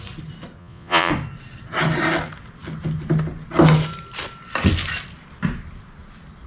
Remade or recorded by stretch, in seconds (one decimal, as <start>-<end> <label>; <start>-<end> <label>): 0.0-0.6 recorded; 0.6-1.1 remade; 1.1-6.5 recorded